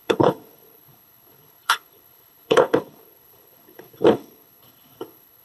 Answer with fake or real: fake